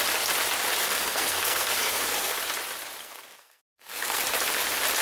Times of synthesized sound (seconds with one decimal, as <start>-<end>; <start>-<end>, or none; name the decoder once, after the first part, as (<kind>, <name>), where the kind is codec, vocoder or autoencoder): 0.8-2.4 (codec, SNAC); 3.0-4.2